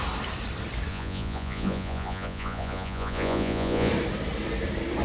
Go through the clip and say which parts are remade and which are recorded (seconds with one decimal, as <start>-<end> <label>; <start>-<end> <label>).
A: 0.0-0.9 recorded; 0.9-3.9 remade; 3.9-5.0 recorded